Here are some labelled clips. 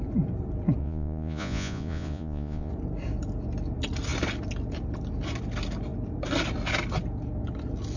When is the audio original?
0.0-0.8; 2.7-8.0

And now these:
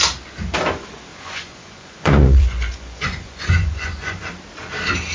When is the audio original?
0.0-1.1; 4.2-5.1

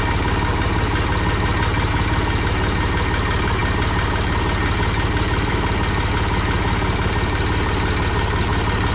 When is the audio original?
0.0-8.9

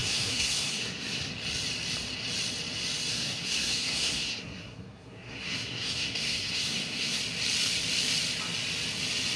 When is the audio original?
1.3-3.1; 7.2-9.4

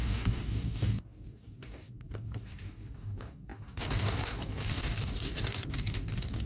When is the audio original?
none

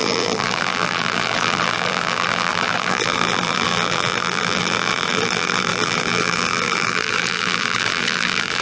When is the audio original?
none

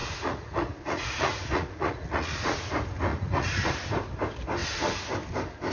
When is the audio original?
2.7-3.1; 3.7-5.7